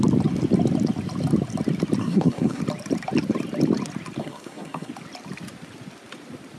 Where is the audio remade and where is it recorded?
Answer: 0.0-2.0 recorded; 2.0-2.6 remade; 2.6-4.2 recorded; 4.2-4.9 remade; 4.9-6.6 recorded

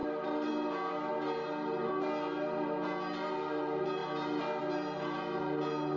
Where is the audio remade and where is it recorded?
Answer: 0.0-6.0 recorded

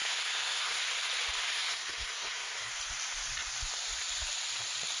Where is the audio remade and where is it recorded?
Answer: 0.0-0.8 remade; 0.8-1.5 recorded; 1.5-2.7 remade; 2.7-5.0 recorded

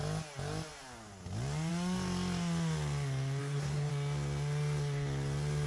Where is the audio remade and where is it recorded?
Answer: 0.0-3.4 recorded; 3.4-3.9 remade; 3.9-5.7 recorded